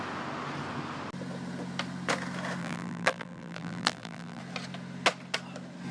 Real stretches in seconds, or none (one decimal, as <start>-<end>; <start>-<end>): 0.0-2.6; 4.4-5.9